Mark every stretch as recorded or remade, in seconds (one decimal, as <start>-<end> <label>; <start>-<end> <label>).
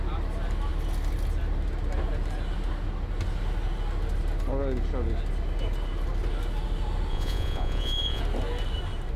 0.0-7.1 recorded; 7.1-8.2 remade; 8.2-9.2 recorded